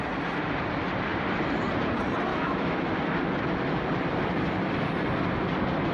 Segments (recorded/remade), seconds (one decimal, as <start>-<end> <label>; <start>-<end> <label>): 0.0-2.3 recorded; 2.3-3.0 remade; 3.0-5.9 recorded